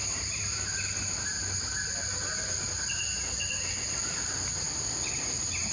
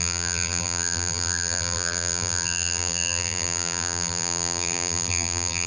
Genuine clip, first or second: first